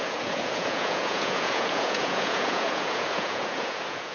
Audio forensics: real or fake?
fake